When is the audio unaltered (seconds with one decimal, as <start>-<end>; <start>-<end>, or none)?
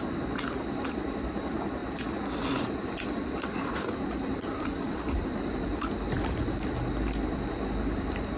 0.0-8.4